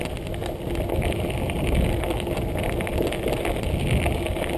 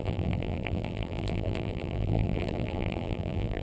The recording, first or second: first